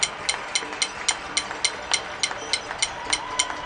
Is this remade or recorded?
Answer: recorded